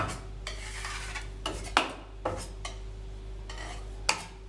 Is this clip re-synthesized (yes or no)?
no